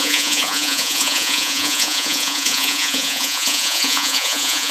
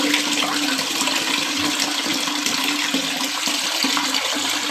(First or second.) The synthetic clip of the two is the first